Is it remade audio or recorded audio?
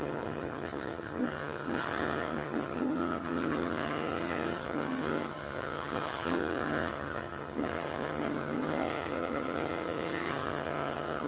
remade